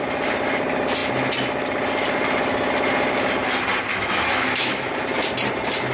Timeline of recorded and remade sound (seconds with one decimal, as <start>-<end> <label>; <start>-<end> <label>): 0.0-3.9 recorded; 3.9-4.9 remade; 4.9-5.9 recorded